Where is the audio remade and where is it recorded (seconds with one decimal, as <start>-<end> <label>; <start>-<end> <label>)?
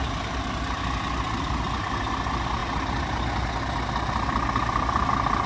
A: 0.0-5.5 recorded